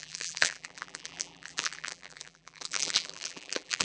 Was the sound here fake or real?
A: fake